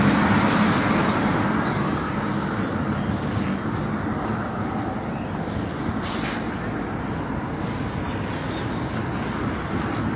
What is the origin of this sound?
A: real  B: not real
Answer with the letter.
A